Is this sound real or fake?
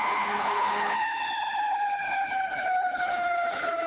fake